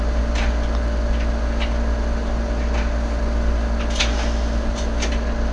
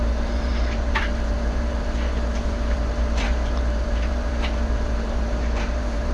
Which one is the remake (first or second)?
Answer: second